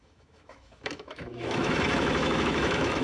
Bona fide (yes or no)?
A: no